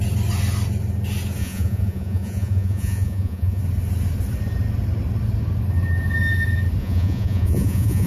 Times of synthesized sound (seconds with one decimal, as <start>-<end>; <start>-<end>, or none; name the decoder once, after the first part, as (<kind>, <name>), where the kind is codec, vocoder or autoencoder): 1.4-3.6 (vocoder, Vocos); 6.8-8.1